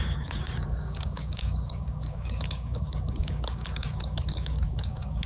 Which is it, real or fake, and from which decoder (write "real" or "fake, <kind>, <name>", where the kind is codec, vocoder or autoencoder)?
fake, codec, DAC